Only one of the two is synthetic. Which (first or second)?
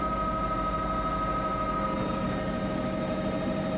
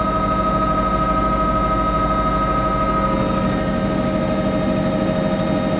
first